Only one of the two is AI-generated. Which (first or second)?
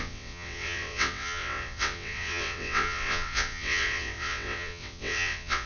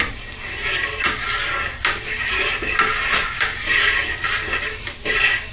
first